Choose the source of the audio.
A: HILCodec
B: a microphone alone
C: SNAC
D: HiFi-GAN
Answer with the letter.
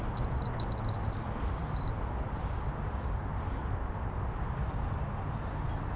B